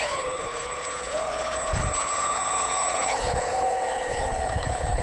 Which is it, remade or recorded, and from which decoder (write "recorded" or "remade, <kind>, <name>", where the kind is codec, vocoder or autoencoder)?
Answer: remade, codec, HILCodec